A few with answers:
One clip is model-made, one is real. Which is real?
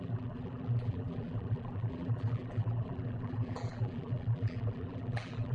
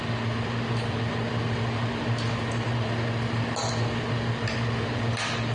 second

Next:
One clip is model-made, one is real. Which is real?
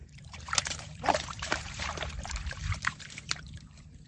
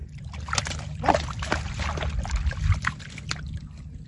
second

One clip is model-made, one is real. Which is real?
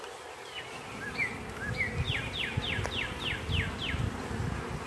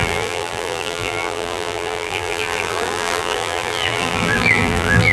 first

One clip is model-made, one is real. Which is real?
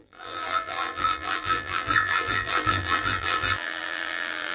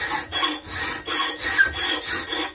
second